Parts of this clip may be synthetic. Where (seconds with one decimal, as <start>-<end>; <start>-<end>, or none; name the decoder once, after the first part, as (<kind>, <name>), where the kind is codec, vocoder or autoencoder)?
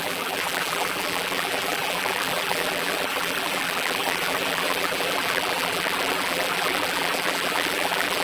0.0-8.2 (vocoder, BigVGAN v2)